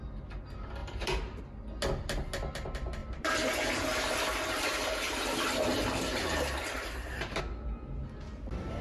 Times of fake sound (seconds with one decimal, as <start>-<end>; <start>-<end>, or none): 0.8-1.4; 3.0-7.4

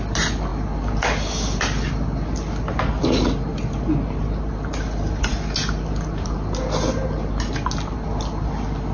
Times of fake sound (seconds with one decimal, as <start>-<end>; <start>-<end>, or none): none

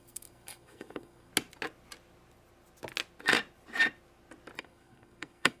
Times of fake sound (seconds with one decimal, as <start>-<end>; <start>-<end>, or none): 0.0-1.3; 4.6-5.6

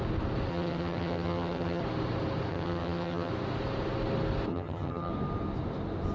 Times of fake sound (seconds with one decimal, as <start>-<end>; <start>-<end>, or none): 0.5-1.8; 2.5-3.3; 4.5-5.1